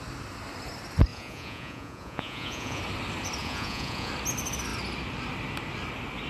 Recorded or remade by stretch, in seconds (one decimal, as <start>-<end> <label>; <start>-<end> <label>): 0.0-1.1 recorded; 1.1-2.8 remade; 2.8-3.4 recorded; 3.4-4.1 remade; 4.1-6.3 recorded